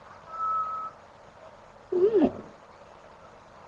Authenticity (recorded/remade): recorded